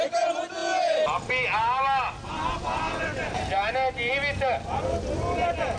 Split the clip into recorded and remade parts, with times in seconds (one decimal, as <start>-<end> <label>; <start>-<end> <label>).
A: 0.0-5.8 recorded